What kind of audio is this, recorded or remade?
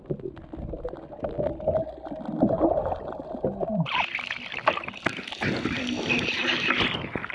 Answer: recorded